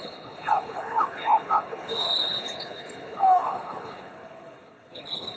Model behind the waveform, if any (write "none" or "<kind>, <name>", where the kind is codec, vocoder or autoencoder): codec, HILCodec